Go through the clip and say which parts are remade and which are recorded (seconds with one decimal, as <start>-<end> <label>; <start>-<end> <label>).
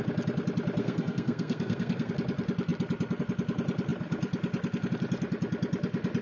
0.0-0.8 recorded; 0.8-2.1 remade; 2.1-6.2 recorded